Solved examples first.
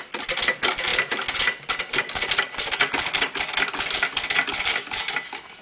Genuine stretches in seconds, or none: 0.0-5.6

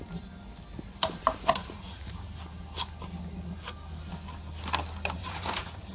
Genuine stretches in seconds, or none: 0.0-1.6; 2.1-5.2

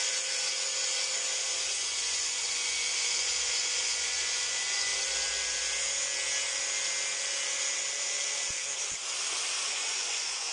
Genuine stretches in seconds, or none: 0.5-1.1; 4.9-9.7

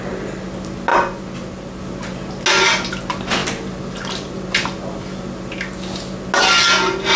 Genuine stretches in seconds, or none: 0.0-7.2

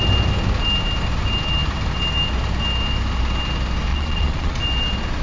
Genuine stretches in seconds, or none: 0.0-3.9; 4.6-5.2

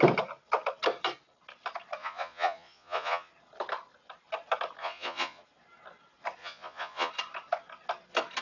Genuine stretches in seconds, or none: 0.0-2.0; 3.3-4.8; 5.4-6.4; 7.1-8.4

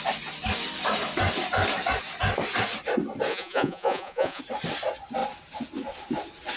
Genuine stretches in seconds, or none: 0.0-3.3; 4.4-6.6